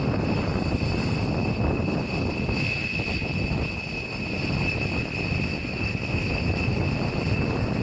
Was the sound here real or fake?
real